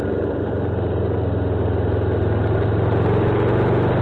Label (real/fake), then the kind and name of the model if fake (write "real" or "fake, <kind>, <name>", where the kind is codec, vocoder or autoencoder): real